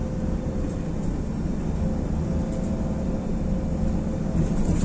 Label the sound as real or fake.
real